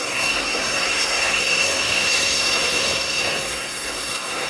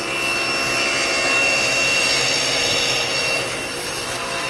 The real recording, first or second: second